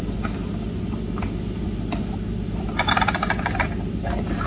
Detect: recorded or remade recorded